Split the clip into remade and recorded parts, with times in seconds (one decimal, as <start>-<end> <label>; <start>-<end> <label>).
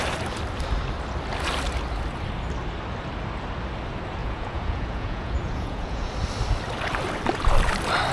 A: 0.0-4.2 recorded; 4.2-6.1 remade; 6.1-8.1 recorded